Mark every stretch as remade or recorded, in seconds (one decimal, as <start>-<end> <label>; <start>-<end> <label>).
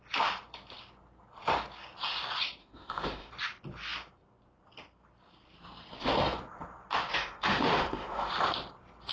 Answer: 0.0-2.6 recorded; 2.6-3.3 remade; 3.3-7.1 recorded; 7.1-8.3 remade; 8.3-9.1 recorded